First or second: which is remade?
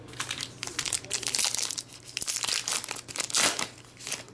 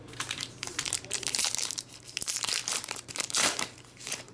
second